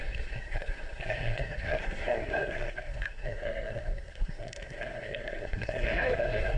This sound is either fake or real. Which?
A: fake